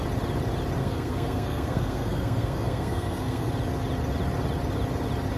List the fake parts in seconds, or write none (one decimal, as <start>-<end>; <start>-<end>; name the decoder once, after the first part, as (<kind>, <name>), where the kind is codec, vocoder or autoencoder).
0.8-3.5 (codec, SNAC)

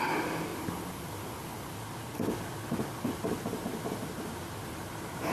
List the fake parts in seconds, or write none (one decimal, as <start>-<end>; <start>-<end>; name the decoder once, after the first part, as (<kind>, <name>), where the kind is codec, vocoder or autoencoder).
0.0-0.5 (vocoder, BigVGAN v2); 3.1-3.7; 4.3-5.3